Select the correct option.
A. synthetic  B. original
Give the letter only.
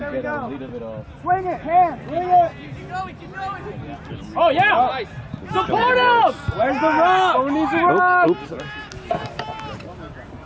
B